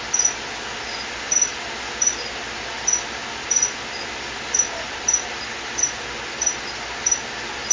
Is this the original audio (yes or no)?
yes